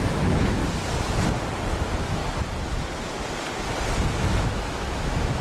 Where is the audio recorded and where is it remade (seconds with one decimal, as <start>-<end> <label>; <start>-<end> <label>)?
0.0-0.6 remade; 0.6-1.7 recorded; 1.7-2.2 remade; 2.2-4.1 recorded; 4.1-5.4 remade

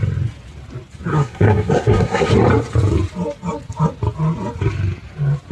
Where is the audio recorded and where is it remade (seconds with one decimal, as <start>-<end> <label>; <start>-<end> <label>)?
0.0-1.1 recorded; 1.1-2.3 remade; 2.3-5.5 recorded

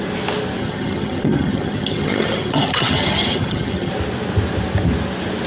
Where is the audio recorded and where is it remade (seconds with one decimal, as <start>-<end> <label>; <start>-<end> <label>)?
0.0-0.6 recorded; 0.6-3.9 remade; 3.9-5.5 recorded

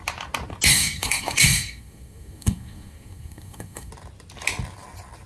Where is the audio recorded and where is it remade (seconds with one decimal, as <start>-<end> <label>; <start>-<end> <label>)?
0.0-0.7 recorded; 0.7-3.9 remade; 3.9-5.3 recorded

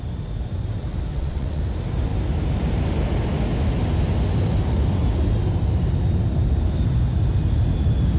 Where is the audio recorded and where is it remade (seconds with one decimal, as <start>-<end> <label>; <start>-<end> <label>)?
0.0-1.1 recorded; 1.1-1.6 remade; 1.6-8.2 recorded